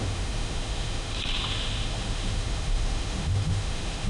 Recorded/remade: remade